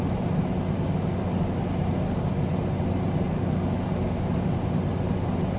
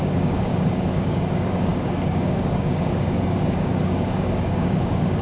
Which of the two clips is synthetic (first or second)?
second